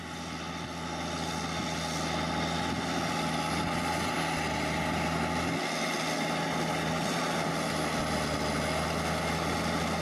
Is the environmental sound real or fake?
real